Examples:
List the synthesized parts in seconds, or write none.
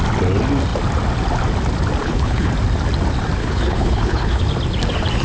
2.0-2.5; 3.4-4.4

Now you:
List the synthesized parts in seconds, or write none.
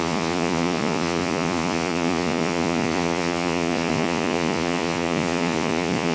0.0-6.1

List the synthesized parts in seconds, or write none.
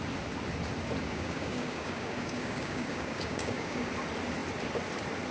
1.0-3.9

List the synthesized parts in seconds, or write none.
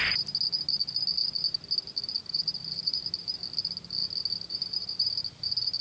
none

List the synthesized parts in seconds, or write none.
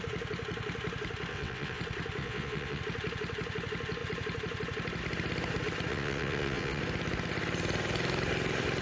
1.3-1.8; 2.2-2.8; 5.9-6.8